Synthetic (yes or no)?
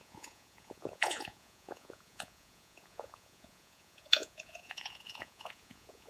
yes